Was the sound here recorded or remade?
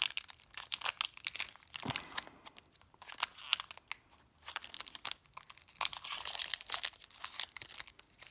recorded